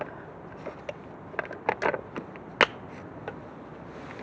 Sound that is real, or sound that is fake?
real